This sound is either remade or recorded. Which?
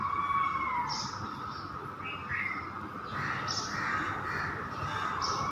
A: recorded